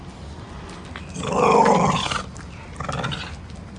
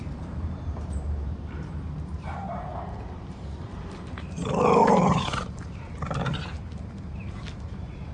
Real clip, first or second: first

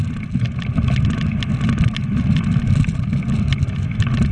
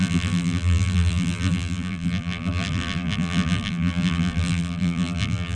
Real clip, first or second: first